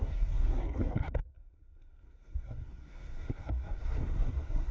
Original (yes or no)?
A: no